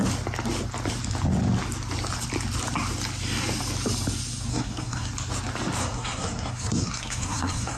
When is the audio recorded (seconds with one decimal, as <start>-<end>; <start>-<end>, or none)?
0.0-4.5; 5.1-5.8